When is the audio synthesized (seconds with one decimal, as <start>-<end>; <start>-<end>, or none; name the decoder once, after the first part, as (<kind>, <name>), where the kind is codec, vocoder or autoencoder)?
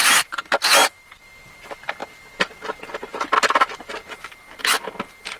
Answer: none